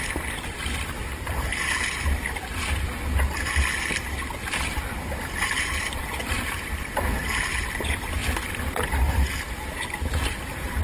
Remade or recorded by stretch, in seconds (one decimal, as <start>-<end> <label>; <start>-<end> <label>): 0.0-1.5 remade; 1.5-5.6 recorded; 5.6-6.8 remade; 6.8-7.7 recorded; 7.7-10.8 remade